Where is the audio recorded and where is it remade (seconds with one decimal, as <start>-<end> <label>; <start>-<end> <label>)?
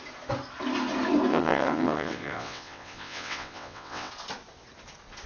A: 0.0-1.3 recorded; 1.3-4.1 remade; 4.1-5.3 recorded